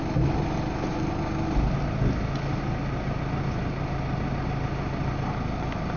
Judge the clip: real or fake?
real